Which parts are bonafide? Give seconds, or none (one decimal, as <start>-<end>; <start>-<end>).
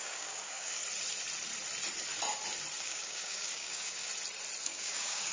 0.8-2.8; 4.1-4.6